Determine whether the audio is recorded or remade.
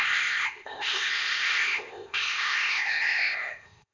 remade